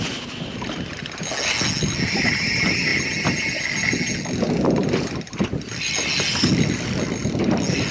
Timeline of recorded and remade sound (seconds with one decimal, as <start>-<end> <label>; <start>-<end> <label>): 0.0-7.9 recorded